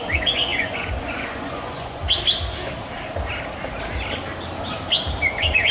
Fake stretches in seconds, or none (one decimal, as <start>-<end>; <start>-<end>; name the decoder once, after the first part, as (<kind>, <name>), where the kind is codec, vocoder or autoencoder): 0.0-2.0 (vocoder, Vocos); 5.3-5.7